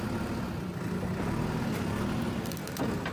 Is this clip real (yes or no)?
yes